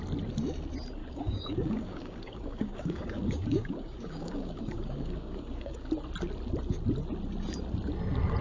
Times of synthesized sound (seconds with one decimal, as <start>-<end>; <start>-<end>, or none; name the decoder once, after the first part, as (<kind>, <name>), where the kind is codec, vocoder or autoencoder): 1.0-5.9 (codec, DAC)